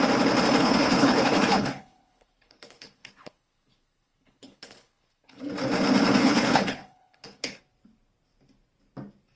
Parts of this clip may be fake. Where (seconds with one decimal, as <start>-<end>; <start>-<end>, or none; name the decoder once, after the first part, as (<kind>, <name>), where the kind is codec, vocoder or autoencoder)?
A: 0.6-5.4 (codec, HILCodec); 6.2-7.6